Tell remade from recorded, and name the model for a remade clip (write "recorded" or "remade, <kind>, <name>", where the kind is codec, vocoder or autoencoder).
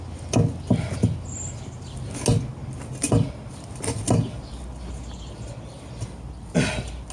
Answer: recorded